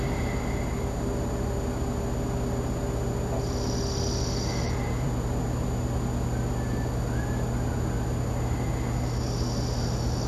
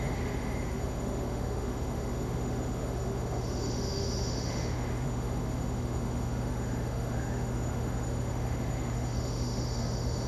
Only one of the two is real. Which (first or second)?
first